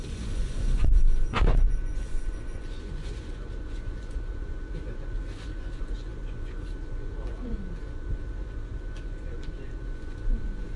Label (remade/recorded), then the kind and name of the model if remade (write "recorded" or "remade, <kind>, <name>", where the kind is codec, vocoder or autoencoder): remade, vocoder, Vocos